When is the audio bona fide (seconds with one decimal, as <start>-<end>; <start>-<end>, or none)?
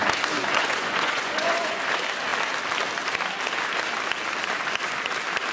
0.0-0.5; 1.8-5.5